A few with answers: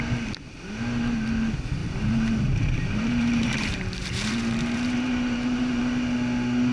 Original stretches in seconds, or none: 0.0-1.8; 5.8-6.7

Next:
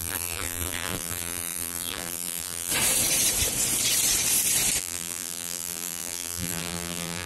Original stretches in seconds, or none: 2.7-4.8

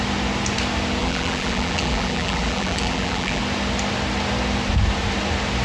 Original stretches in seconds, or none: 0.0-1.0; 3.4-5.6